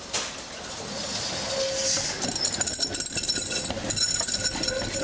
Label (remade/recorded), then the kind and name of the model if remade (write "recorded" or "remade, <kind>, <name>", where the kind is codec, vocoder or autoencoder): recorded